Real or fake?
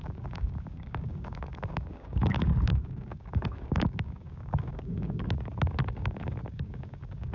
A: fake